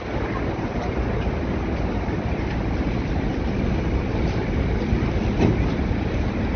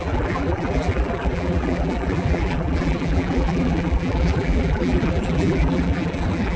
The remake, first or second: second